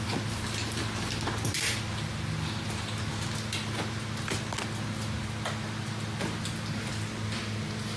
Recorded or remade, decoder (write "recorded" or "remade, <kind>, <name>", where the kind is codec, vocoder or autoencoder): recorded